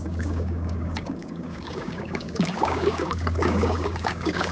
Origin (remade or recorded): remade